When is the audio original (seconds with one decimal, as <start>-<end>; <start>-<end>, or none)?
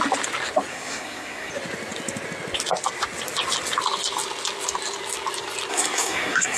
0.0-0.7; 1.5-5.7